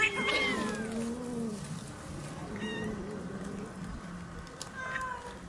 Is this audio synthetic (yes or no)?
no